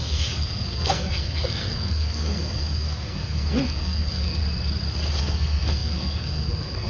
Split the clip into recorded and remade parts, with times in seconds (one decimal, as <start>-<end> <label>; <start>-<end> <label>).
0.0-4.4 remade; 4.4-5.2 recorded; 5.2-6.9 remade